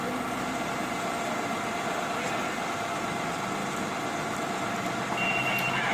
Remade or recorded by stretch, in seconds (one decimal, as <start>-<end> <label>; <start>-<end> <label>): 0.0-5.9 recorded